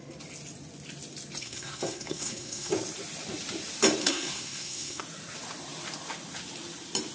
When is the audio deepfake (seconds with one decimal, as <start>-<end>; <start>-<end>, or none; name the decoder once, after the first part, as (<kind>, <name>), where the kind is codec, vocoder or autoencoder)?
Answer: 1.4-2.7 (codec, SNAC); 4.0-5.0